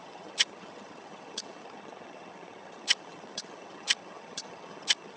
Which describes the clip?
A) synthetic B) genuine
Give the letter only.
A